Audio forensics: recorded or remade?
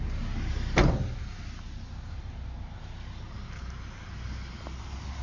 recorded